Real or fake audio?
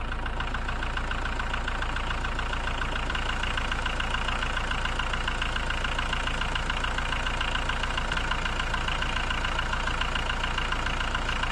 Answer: real